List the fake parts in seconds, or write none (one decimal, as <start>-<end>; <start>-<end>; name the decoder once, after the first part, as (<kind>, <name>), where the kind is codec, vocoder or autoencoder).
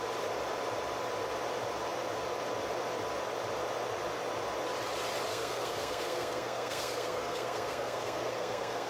5.3-8.9 (codec, SNAC)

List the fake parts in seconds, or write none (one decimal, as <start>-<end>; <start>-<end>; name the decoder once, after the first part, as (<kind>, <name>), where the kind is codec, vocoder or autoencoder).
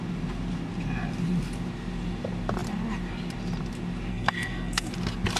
4.1-4.9 (codec, SNAC)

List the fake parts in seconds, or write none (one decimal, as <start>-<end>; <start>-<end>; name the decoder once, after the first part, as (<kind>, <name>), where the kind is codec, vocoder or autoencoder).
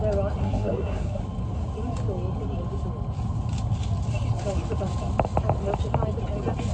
0.4-1.2 (codec, SNAC)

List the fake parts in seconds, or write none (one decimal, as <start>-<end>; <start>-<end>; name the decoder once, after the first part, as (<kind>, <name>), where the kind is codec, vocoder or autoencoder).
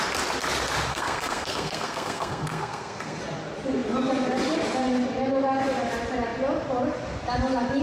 0.9-3.2 (codec, SNAC)